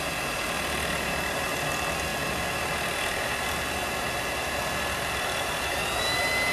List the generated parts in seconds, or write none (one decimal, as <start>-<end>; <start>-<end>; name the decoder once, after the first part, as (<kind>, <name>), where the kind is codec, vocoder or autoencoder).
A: none